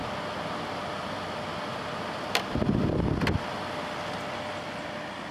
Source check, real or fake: real